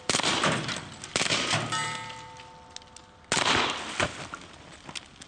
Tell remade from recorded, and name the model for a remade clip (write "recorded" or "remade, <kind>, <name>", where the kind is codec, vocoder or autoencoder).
recorded